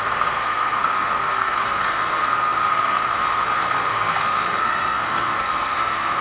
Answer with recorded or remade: remade